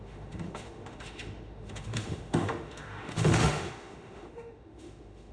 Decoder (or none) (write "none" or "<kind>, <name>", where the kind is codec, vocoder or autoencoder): autoencoder, DAC-VAE